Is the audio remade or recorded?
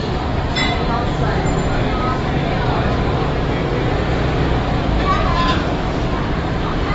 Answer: recorded